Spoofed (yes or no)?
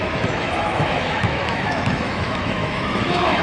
yes